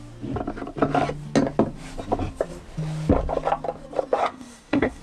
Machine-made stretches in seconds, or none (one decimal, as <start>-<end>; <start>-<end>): 4.2-5.0